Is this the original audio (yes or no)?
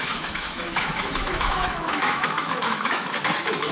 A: no